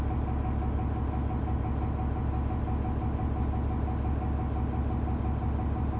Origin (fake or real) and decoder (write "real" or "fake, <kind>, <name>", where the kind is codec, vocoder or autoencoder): real